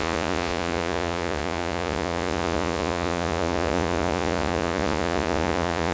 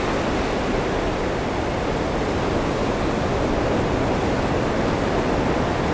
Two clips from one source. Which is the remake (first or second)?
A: first